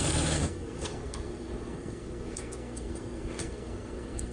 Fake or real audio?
fake